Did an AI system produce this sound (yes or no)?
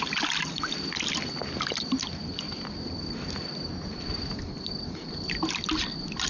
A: no